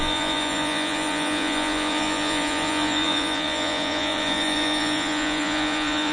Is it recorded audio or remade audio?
remade